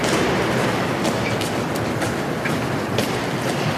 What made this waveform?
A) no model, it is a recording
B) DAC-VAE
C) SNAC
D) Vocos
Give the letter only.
A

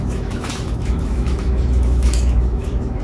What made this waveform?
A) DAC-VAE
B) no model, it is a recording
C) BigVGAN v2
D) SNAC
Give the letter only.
A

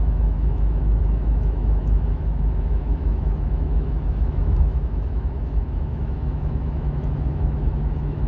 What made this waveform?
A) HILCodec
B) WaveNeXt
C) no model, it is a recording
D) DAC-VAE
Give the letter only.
D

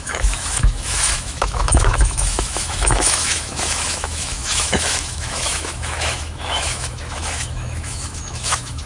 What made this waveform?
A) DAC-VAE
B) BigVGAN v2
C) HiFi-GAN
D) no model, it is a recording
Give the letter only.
A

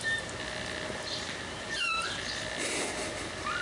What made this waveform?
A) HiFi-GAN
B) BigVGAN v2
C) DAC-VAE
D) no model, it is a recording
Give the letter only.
D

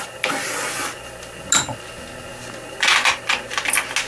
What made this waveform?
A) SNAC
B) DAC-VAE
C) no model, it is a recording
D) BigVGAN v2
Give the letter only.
C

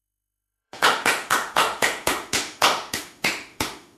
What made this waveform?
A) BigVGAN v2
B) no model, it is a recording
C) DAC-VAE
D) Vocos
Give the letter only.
C